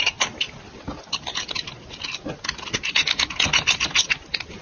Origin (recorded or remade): recorded